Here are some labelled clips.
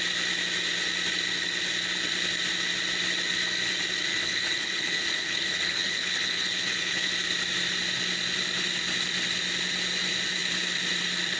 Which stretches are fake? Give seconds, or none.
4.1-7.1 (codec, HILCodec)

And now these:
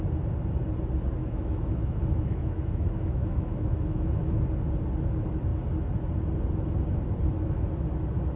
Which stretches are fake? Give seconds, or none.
1.2-4.4 (autoencoder, DAC-VAE)

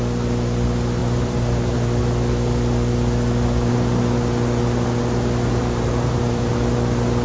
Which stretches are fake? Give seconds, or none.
1.0-2.0 (vocoder, BigVGAN v2); 5.6-6.5

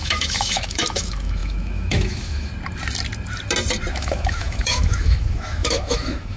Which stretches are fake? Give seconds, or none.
0.0-2.5 (autoencoder, DAC-VAE); 3.9-6.4

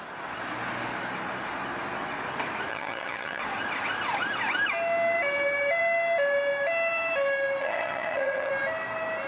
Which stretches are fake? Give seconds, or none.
2.7-3.4 (vocoder, HiFi-GAN); 7.6-8.5

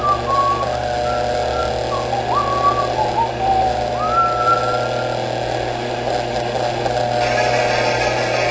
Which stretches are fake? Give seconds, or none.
none

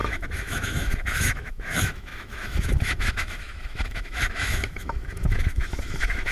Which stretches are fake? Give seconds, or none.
0.0-6.3 (autoencoder, DAC-VAE)

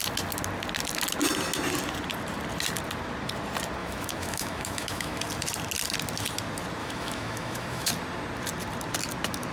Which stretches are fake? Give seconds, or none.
3.8-5.2 (autoencoder, DAC-VAE); 6.8-7.9